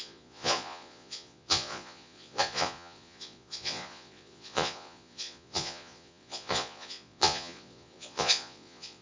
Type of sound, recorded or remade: remade